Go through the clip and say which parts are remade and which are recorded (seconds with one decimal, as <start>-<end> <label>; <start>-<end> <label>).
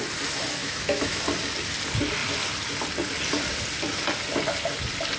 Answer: 0.0-0.6 recorded; 0.6-1.2 remade; 1.2-5.2 recorded